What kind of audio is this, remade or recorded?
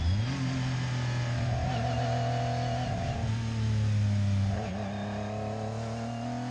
recorded